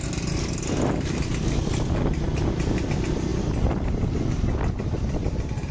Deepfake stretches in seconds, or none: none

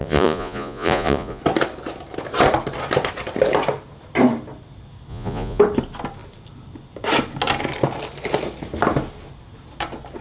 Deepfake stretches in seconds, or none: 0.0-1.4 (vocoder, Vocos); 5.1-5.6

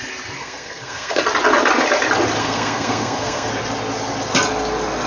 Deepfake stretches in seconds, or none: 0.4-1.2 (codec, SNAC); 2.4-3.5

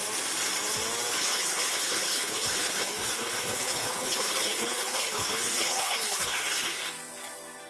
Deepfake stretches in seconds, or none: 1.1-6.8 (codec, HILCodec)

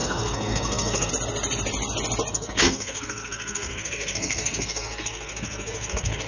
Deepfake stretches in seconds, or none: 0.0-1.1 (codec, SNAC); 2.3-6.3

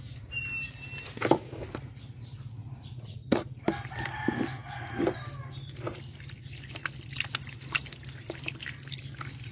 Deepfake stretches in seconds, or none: 2.6-3.6 (vocoder, Vocos)

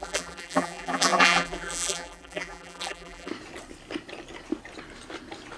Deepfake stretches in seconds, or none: 0.0-3.3 (vocoder, BigVGAN v2)